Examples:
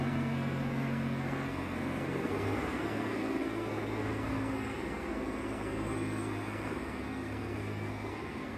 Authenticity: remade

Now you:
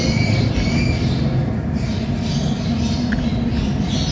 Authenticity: recorded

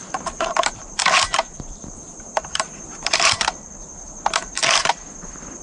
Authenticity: remade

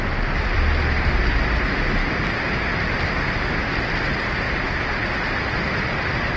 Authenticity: recorded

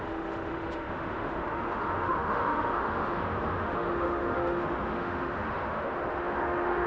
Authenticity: remade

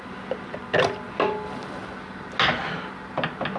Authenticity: recorded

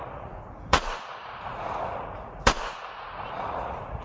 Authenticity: remade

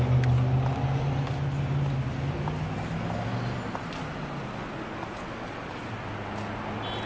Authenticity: recorded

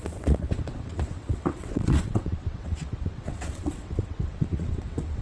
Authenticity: remade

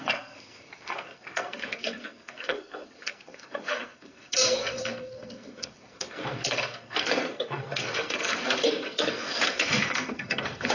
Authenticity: remade